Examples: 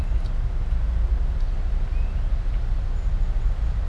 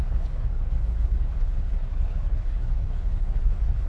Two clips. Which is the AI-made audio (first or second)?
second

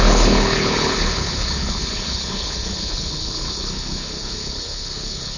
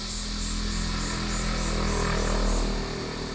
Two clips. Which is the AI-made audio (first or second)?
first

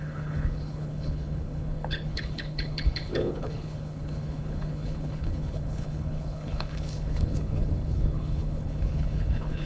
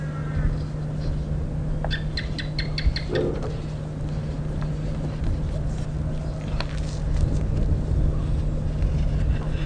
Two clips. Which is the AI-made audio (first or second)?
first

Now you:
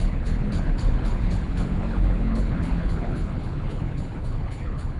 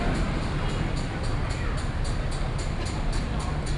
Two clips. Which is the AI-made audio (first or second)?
first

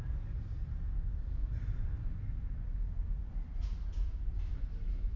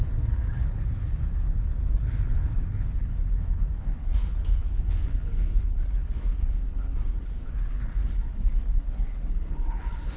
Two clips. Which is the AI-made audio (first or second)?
second